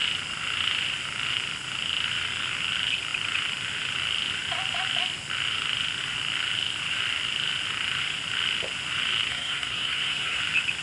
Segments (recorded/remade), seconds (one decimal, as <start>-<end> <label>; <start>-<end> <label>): 0.0-9.3 recorded; 9.3-10.4 remade; 10.4-10.8 recorded